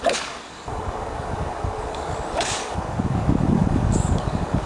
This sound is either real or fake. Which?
fake